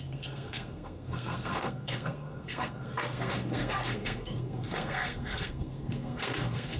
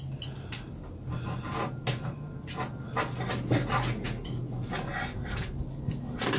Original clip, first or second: second